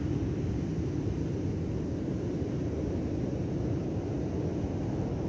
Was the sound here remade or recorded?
recorded